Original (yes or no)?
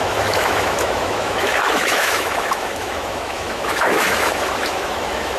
no